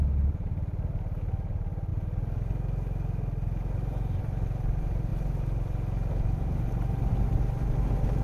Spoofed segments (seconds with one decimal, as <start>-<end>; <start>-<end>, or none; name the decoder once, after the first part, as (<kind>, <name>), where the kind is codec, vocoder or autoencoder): none